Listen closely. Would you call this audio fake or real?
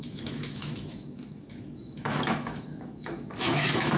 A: fake